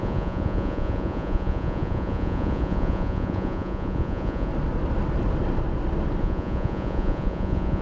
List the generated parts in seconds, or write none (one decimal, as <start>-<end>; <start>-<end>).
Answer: 0.0-4.5; 6.2-7.8